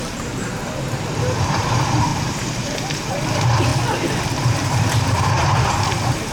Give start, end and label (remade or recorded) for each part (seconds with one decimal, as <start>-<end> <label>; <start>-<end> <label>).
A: 0.0-3.7 remade; 3.7-4.4 recorded; 4.4-6.3 remade